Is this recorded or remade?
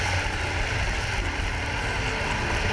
recorded